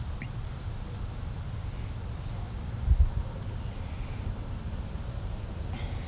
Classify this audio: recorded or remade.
recorded